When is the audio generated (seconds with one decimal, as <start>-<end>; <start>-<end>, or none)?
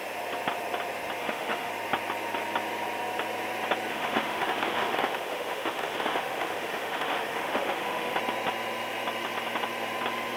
1.2-1.7; 3.9-8.2